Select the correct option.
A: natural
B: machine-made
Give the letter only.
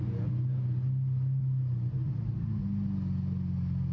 A